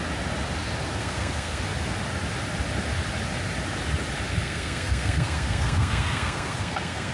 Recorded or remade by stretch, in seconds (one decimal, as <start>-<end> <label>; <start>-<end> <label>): 0.0-1.0 recorded; 1.0-1.6 remade; 1.6-4.3 recorded; 4.3-7.1 remade